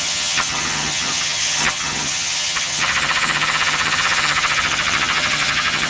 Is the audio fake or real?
fake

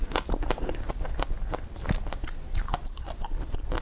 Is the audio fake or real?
real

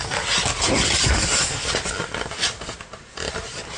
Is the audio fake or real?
real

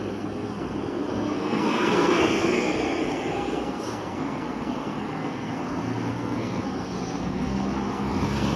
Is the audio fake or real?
fake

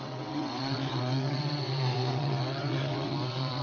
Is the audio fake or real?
fake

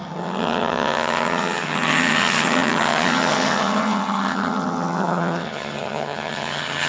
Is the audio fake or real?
fake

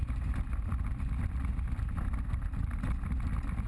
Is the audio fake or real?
real